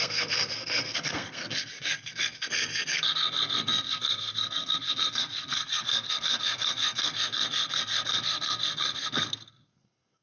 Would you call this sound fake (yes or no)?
yes